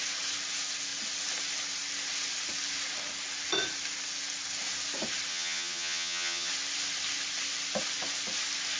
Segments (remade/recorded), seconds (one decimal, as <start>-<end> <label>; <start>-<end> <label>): 0.0-5.3 recorded; 5.3-6.5 remade; 6.5-8.8 recorded

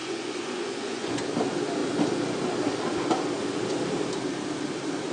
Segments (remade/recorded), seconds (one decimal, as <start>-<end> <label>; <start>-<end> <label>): 0.0-1.2 remade; 1.2-5.1 recorded

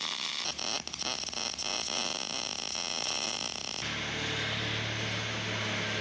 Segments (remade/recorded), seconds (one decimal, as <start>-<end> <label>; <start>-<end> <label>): 0.0-6.0 recorded

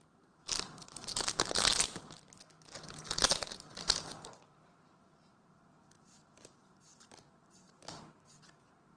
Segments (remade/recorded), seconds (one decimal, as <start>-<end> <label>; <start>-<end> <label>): 0.0-1.7 remade; 1.7-4.5 recorded; 4.5-9.0 remade

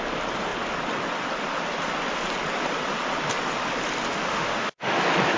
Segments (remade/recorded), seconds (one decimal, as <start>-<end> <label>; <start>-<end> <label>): 0.0-4.3 recorded; 4.3-5.0 remade; 5.0-5.4 recorded